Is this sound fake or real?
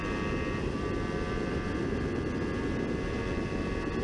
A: real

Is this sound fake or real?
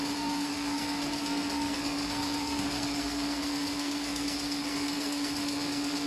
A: fake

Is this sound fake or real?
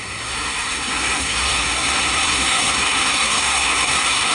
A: fake